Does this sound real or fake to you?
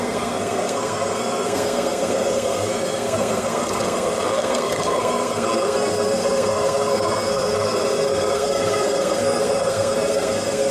fake